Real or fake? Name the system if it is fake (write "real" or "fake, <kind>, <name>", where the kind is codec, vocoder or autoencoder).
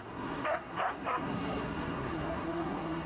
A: fake, codec, SNAC